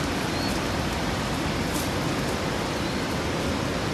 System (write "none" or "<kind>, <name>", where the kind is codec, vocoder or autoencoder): none